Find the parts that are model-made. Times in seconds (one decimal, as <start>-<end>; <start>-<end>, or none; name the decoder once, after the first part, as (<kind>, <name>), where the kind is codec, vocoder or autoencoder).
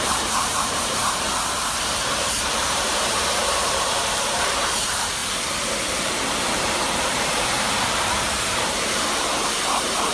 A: 0.0-5.2 (vocoder, BigVGAN v2); 6.0-10.1